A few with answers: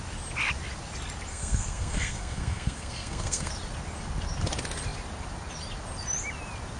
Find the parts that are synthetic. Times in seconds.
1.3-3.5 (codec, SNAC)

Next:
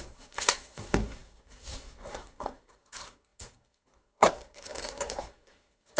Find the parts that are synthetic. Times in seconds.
0.0-6.0 (codec, SNAC)

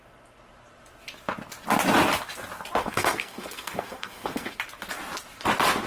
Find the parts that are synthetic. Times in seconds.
2.8-4.6 (codec, SNAC)

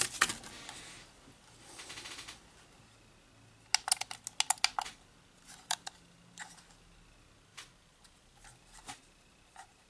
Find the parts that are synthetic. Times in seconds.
none

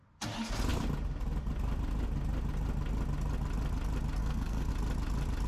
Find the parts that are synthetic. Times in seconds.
4.2-4.7 (codec, SNAC)